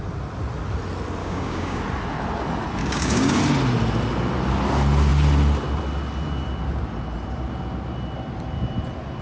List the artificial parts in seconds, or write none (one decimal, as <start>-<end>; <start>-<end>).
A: 1.2-1.8; 2.8-3.4